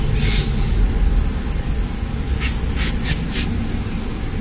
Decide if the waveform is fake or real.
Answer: real